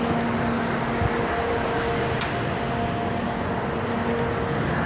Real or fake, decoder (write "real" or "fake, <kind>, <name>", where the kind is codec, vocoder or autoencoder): real